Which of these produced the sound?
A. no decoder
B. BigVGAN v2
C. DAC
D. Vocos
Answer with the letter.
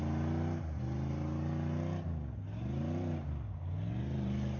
A